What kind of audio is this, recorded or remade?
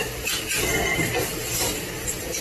recorded